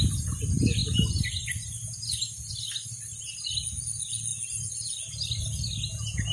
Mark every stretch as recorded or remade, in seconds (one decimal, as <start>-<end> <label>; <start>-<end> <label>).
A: 0.0-6.3 recorded